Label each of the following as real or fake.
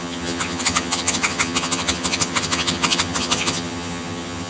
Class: fake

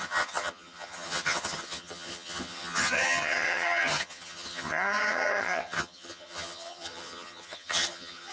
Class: fake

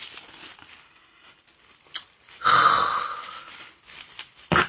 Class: real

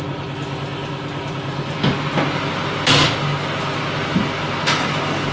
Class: real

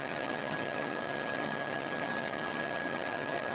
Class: fake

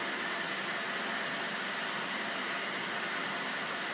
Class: real